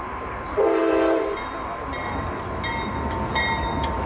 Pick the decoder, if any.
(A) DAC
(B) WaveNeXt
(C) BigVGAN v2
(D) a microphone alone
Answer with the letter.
C